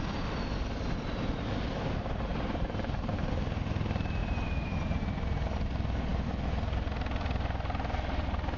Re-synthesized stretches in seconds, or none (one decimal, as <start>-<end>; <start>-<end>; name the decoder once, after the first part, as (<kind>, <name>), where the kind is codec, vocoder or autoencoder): 2.3-3.3 (vocoder, BigVGAN v2); 4.2-5.0